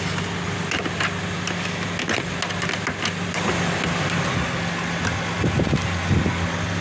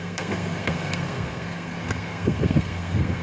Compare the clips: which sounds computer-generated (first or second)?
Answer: second